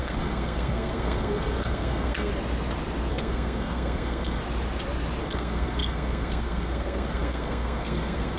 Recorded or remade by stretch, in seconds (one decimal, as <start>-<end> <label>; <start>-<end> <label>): 0.0-2.3 remade; 2.3-3.1 recorded; 3.1-4.4 remade; 4.4-5.2 recorded; 5.2-8.4 remade